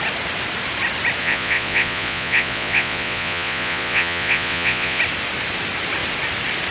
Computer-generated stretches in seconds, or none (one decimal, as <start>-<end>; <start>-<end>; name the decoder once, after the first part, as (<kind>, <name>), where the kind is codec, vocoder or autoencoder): 1.2-5.0 (vocoder, Vocos)